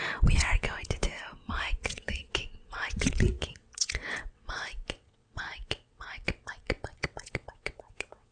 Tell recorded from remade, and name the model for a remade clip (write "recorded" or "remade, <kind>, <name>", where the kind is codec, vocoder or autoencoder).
remade, vocoder, WaveNeXt